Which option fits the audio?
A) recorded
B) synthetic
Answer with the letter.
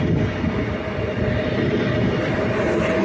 A